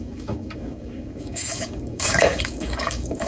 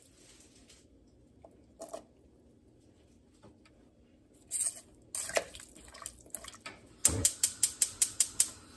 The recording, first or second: second